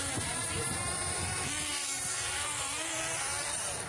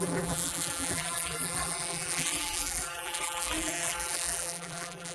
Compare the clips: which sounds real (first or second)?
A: first